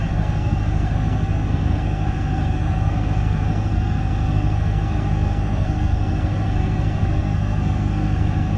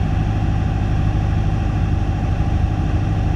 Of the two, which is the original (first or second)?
second